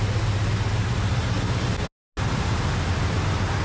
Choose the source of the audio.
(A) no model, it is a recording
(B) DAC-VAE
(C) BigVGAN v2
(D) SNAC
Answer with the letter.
A